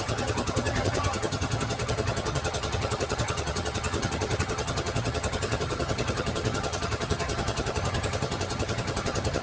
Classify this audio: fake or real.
fake